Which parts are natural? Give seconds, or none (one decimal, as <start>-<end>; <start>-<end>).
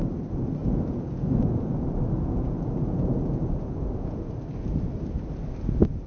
0.0-0.6; 4.3-6.1